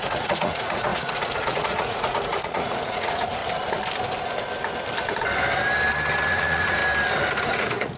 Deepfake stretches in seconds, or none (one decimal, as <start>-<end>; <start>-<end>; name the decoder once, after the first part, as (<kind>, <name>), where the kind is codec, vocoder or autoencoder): 0.0-3.4 (vocoder, Vocos); 6.3-6.8; 7.4-8.0